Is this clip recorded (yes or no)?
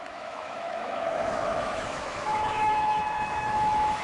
no